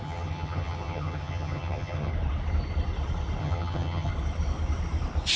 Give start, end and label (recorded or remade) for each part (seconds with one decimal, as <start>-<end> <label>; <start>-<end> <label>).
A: 0.0-2.1 remade; 2.1-3.4 recorded; 3.4-4.1 remade; 4.1-5.4 recorded